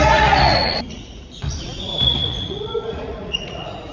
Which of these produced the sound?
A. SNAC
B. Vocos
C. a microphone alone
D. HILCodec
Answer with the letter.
B